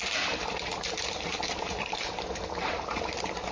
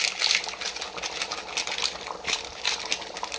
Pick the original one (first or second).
second